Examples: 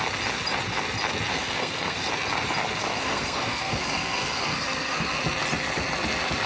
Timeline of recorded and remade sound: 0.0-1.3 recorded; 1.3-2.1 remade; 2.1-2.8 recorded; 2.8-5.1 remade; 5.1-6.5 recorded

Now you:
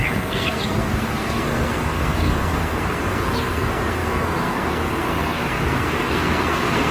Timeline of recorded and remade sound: 0.0-6.9 remade

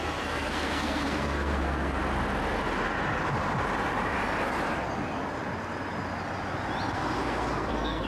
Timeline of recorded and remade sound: 0.0-2.0 remade; 2.0-6.9 recorded; 6.9-8.1 remade

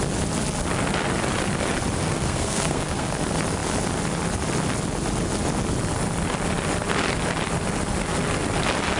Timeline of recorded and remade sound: 0.0-2.0 recorded; 2.0-3.1 remade; 3.1-9.0 recorded

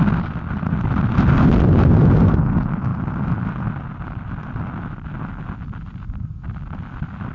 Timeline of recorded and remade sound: 0.0-7.3 recorded

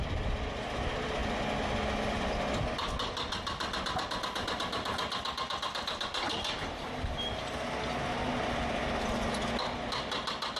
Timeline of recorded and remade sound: 0.0-10.6 recorded

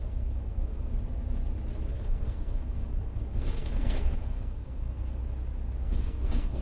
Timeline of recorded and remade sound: 0.0-0.9 remade; 0.9-1.9 recorded; 1.9-5.2 remade; 5.2-5.8 recorded; 5.8-6.6 remade

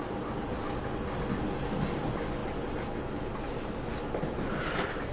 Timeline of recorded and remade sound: 0.0-5.1 recorded